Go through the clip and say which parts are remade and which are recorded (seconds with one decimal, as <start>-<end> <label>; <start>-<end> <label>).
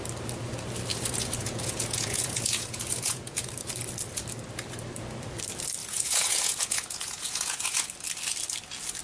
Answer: 0.0-0.9 recorded; 0.9-3.5 remade; 3.5-5.8 recorded; 5.8-7.9 remade; 7.9-9.0 recorded